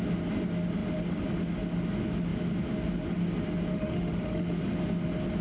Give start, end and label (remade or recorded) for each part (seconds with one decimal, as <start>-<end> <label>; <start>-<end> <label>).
0.0-3.7 recorded; 3.7-4.6 remade; 4.6-5.4 recorded